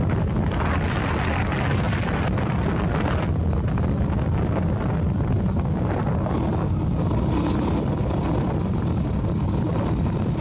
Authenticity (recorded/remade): recorded